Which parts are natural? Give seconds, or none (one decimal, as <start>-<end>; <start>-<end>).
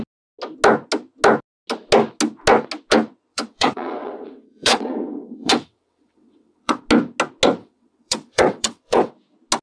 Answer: 0.0-3.3; 6.8-7.6; 9.1-9.6